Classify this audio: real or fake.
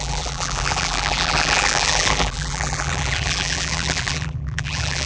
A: fake